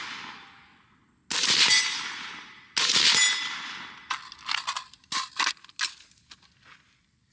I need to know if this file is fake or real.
real